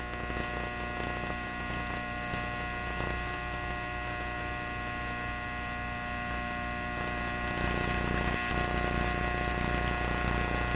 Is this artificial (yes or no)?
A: no